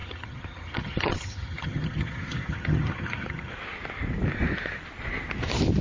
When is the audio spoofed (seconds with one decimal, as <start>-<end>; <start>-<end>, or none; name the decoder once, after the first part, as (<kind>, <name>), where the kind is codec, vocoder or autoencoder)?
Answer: 0.0-3.5 (vocoder, HiFi-GAN)